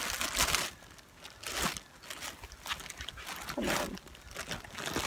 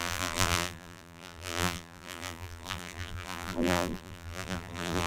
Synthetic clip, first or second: second